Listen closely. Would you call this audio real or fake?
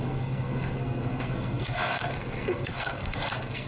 fake